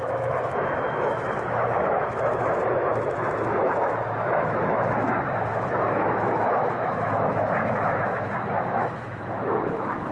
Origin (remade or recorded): remade